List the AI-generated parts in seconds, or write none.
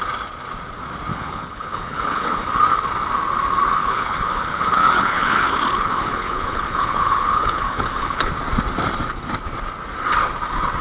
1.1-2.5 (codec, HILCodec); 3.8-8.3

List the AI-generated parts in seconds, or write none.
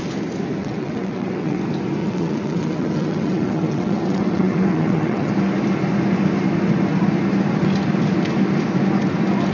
0.6-1.6 (vocoder, WaveNeXt); 2.0-5.3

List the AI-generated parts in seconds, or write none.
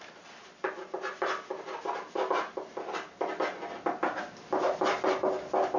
none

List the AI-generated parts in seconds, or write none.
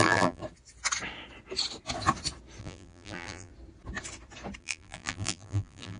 0.0-0.4 (vocoder, BigVGAN v2); 2.6-3.5; 4.6-6.0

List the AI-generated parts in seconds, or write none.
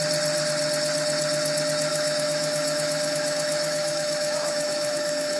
1.9-5.4 (autoencoder, DAC-VAE)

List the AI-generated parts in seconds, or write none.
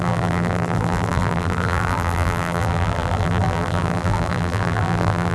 0.0-5.3 (vocoder, BigVGAN v2)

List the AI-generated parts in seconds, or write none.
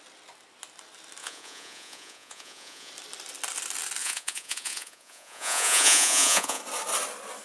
1.2-2.9 (vocoder, Vocos); 4.0-6.6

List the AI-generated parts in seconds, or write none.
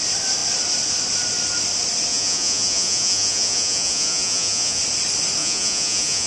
2.1-4.8 (vocoder, Vocos); 5.4-6.3